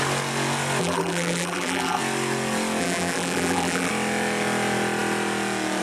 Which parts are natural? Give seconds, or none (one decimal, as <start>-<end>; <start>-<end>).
0.0-0.8; 2.0-2.8; 3.9-5.8